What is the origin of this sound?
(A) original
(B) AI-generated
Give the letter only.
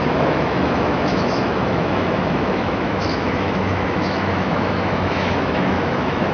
B